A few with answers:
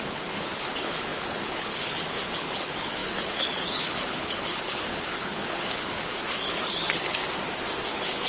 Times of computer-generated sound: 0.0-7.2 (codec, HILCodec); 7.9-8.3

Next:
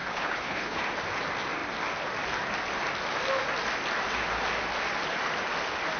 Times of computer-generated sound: 0.0-0.8 (codec, HILCodec)